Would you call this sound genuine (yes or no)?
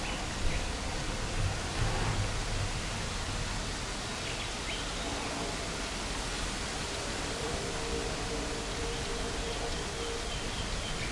yes